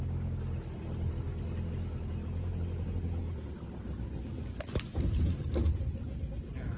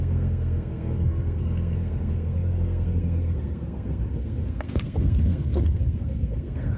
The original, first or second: first